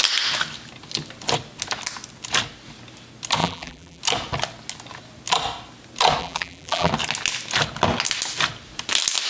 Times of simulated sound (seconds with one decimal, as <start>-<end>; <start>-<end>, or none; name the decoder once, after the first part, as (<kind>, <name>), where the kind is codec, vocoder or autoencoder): 3.4-4.0 (vocoder, BigVGAN v2); 6.2-6.9